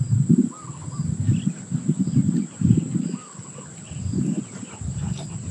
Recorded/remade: recorded